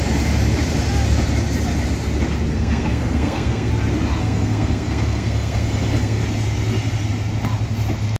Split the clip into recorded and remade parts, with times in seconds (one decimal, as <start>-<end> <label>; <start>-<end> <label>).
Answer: 0.0-2.5 recorded; 2.5-3.7 remade; 3.7-4.2 recorded; 4.2-6.2 remade; 6.2-8.2 recorded